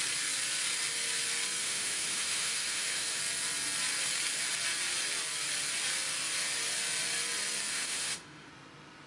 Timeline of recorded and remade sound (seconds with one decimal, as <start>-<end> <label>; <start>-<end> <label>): 0.0-1.6 recorded; 1.6-3.2 remade; 3.2-7.7 recorded; 7.7-8.5 remade; 8.5-9.1 recorded